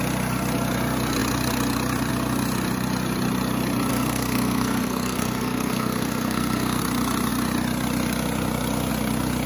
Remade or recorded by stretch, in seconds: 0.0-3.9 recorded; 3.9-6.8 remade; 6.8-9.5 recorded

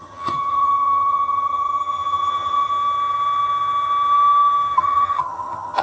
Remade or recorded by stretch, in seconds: 0.0-2.7 remade; 2.7-4.8 recorded; 4.8-5.8 remade

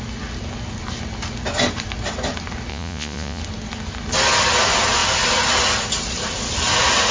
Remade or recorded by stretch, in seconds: 0.0-2.7 recorded; 2.7-3.4 remade; 3.4-7.1 recorded